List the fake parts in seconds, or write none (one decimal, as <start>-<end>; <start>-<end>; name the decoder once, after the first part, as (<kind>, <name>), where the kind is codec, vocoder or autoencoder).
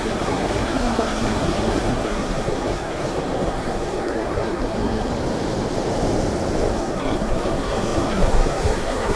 0.0-5.1 (codec, SNAC); 6.7-9.2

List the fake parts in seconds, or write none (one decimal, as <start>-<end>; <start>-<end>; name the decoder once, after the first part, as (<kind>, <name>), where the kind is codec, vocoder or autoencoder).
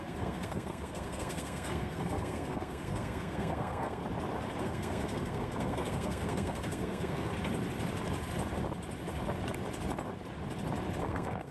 0.0-4.0 (codec, SNAC); 4.6-7.3; 11.0-11.5